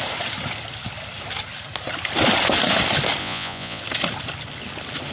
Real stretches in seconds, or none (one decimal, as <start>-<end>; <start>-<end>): 0.0-3.2; 3.8-5.1